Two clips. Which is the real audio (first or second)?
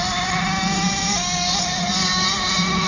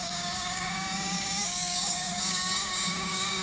first